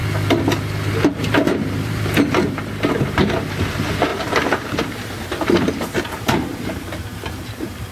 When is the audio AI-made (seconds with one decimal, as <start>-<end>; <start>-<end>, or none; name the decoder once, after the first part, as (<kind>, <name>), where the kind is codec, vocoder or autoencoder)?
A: 1.1-7.9 (vocoder, BigVGAN v2)